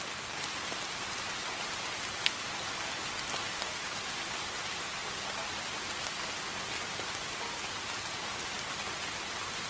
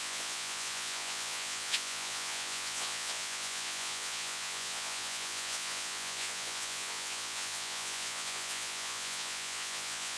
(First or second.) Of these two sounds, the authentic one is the first